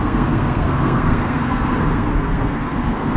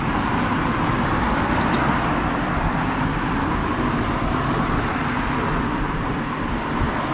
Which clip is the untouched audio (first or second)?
second